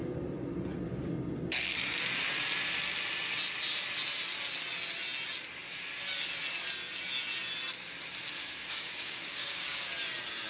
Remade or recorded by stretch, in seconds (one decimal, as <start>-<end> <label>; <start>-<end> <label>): 0.0-8.4 recorded; 8.4-9.9 remade; 9.9-10.5 recorded